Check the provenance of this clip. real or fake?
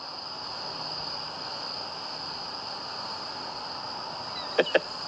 real